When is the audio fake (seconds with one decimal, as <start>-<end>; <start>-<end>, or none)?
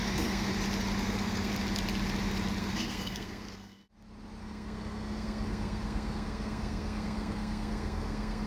0.0-0.5; 1.0-1.5; 2.6-3.8; 4.4-8.5